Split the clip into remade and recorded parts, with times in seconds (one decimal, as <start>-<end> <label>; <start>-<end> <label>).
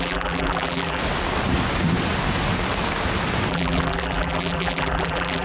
0.0-1.0 remade; 1.0-3.5 recorded; 3.5-5.4 remade